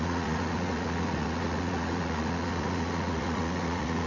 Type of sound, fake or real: fake